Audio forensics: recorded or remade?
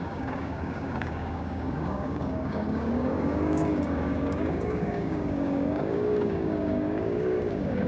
remade